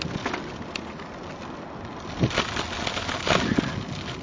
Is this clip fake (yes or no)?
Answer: no